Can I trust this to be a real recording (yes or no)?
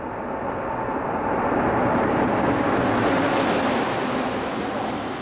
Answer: yes